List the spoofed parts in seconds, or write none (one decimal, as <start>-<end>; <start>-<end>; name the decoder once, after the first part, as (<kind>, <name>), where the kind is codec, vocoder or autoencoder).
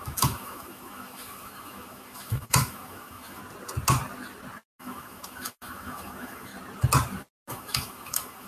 0.0-3.4 (autoencoder, DAC-VAE); 4.8-6.5; 7.5-8.5